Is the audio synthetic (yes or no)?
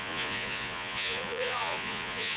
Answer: yes